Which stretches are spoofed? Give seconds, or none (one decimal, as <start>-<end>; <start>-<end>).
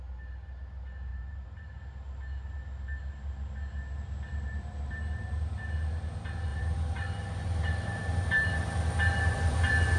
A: 1.1-1.8; 4.3-5.3; 6.5-9.5